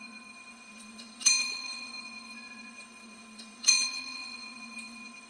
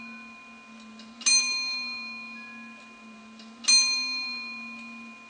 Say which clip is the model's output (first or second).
first